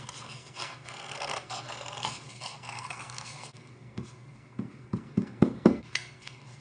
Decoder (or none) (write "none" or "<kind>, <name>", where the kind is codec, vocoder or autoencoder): codec, SNAC